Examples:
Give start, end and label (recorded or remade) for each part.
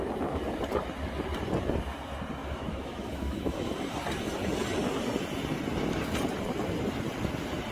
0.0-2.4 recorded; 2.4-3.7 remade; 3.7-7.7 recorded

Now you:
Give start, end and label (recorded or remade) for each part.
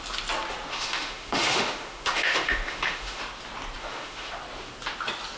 0.0-0.7 recorded; 0.7-3.2 remade; 3.2-3.8 recorded; 3.8-4.4 remade; 4.4-5.4 recorded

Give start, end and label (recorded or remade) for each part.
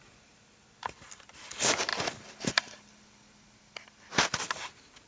0.0-5.1 recorded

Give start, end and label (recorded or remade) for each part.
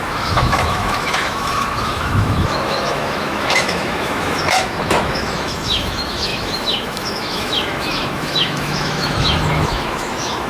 0.0-10.5 remade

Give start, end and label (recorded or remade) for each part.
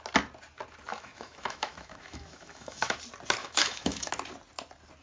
0.0-0.9 recorded; 0.9-3.0 remade; 3.0-3.4 recorded; 3.4-4.1 remade; 4.1-5.0 recorded